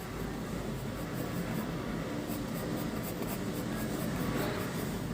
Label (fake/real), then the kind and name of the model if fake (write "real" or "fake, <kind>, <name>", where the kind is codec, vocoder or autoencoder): real